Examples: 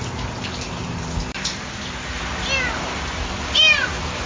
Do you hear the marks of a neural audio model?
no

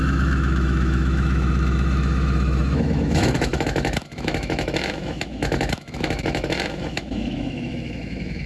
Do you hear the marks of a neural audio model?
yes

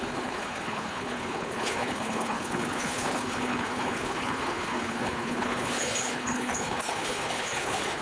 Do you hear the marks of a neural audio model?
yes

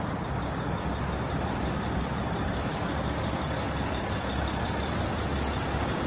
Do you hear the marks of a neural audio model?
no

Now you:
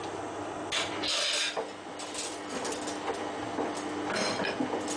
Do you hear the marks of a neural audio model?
no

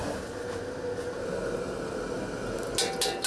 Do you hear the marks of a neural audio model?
no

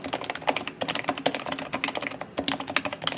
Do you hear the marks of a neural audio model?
no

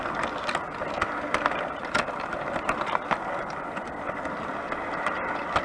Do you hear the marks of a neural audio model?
no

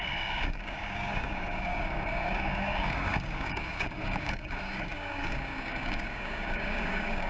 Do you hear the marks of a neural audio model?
yes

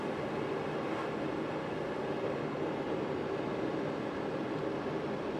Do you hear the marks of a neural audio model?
no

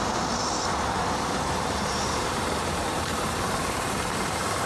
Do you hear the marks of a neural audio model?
yes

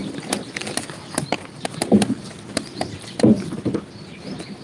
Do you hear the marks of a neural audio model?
no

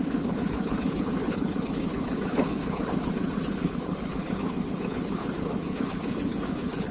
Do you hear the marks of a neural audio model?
yes